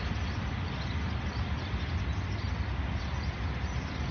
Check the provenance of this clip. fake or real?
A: real